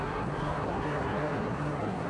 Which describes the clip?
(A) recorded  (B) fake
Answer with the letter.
B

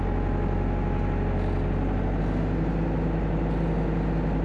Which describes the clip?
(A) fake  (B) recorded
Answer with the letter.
B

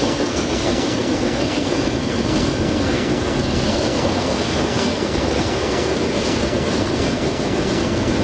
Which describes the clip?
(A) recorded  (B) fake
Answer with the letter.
B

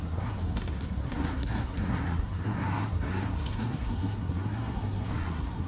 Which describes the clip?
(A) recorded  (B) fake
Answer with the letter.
B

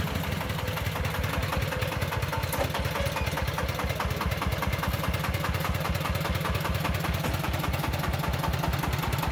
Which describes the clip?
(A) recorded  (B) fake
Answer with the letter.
A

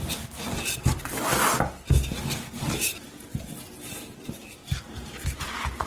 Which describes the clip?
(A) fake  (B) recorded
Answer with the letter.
B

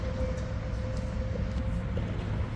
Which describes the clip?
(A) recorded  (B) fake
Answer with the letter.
A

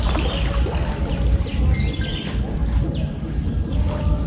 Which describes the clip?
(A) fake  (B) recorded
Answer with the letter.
B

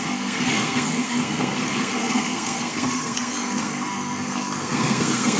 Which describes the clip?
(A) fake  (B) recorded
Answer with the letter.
A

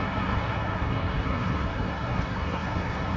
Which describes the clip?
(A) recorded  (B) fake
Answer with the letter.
B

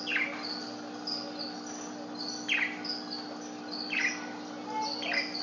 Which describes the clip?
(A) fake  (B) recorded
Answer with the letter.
B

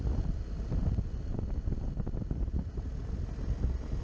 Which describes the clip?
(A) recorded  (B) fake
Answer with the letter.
A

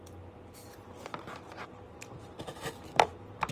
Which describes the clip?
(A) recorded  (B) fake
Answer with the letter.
A